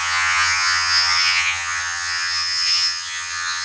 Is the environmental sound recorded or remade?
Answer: remade